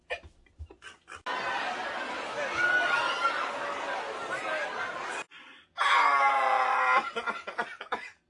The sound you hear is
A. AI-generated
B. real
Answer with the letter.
B